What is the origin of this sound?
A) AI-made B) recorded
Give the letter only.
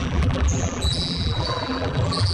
A